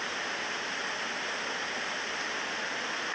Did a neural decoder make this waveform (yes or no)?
no